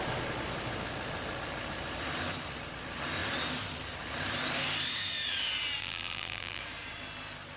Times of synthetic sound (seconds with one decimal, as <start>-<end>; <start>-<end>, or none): 5.8-6.6